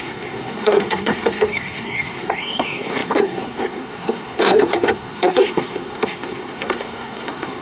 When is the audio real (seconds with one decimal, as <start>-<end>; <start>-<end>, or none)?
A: none